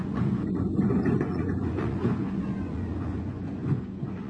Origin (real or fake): fake